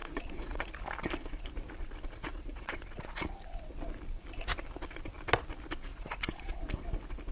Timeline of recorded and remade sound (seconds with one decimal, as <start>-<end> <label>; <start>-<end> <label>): 0.0-0.7 remade; 0.7-2.3 recorded; 2.3-3.4 remade; 3.4-5.9 recorded; 5.9-6.6 remade; 6.6-7.3 recorded